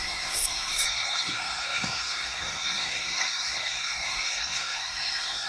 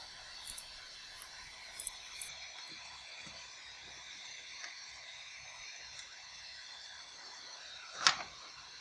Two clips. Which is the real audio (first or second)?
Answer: second